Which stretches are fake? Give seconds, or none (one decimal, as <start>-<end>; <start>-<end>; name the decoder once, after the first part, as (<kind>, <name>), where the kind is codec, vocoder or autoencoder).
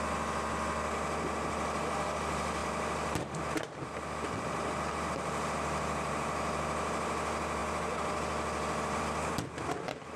none